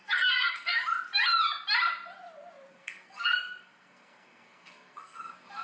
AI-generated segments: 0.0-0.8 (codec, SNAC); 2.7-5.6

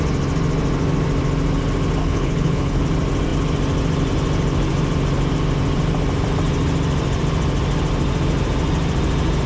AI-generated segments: 2.0-2.8 (codec, HILCodec)

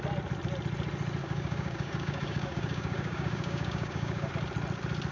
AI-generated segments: 1.2-4.3 (codec, DAC)

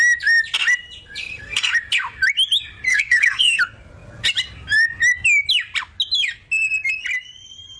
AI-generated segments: 1.2-1.7 (codec, SNAC); 2.9-3.6

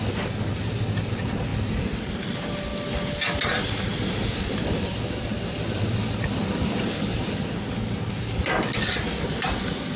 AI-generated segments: none

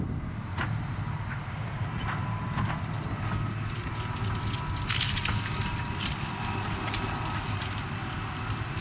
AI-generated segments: 0.5-2.7 (vocoder, BigVGAN v2)

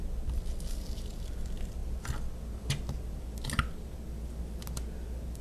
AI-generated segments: none

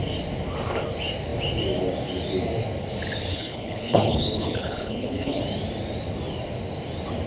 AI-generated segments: 3.3-5.4 (codec, HILCodec)